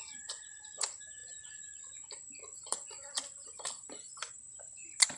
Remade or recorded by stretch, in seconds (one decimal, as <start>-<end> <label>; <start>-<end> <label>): 0.0-5.2 recorded

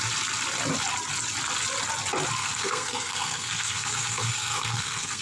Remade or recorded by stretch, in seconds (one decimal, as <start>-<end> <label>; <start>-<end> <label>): 0.0-2.4 recorded; 2.4-5.2 remade

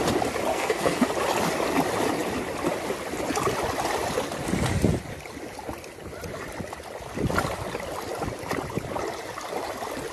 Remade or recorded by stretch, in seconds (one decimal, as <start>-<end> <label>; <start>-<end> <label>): 0.0-0.5 recorded; 0.5-1.1 remade; 1.1-10.1 recorded

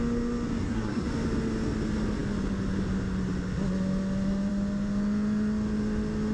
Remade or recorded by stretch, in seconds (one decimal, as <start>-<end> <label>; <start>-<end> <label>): 0.0-0.6 recorded; 0.6-1.1 remade; 1.1-6.3 recorded

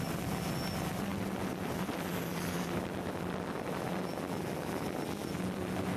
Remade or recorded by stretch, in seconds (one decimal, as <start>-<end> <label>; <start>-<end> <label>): 0.0-6.0 recorded

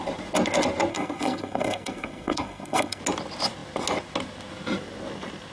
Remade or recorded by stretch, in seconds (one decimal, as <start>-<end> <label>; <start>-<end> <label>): 0.0-0.9 recorded; 0.9-3.0 remade; 3.0-5.5 recorded

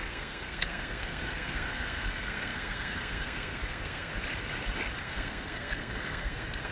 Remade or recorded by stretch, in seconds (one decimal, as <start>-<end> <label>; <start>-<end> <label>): 0.0-4.1 remade; 4.1-5.0 recorded; 5.0-6.7 remade